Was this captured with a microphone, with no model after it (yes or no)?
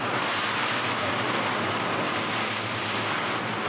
yes